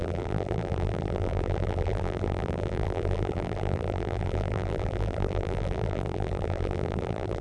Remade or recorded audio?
remade